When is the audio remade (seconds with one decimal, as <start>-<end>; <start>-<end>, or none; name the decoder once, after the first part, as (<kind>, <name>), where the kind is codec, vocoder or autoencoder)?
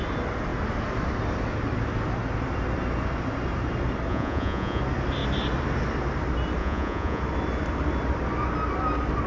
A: 4.1-4.8 (vocoder, Vocos); 6.6-7.2